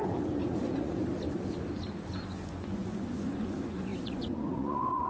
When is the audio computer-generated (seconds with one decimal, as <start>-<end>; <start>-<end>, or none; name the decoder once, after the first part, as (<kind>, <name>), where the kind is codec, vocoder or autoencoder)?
0.0-1.0 (vocoder, Vocos); 2.1-5.1